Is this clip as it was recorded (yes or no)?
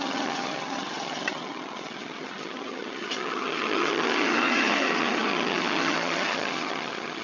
no